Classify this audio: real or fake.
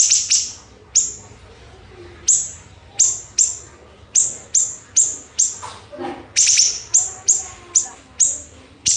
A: real